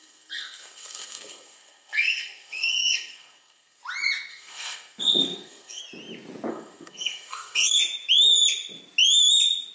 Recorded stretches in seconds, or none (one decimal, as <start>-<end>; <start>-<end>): 3.8-4.3; 5.8-6.5; 7.8-9.7